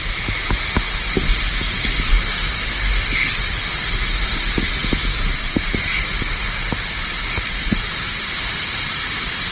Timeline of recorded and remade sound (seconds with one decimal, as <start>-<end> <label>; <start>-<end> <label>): 0.0-9.5 recorded